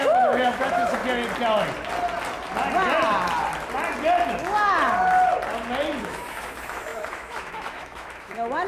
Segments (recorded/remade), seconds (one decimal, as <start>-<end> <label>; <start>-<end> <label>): 0.0-1.0 remade; 1.0-6.0 recorded; 6.0-8.7 remade